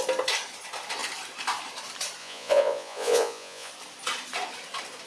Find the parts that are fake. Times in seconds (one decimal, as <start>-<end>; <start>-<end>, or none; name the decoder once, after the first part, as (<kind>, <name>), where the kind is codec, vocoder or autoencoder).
2.2-3.7 (vocoder, Vocos)